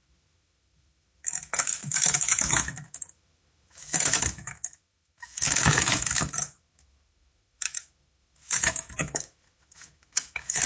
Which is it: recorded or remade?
remade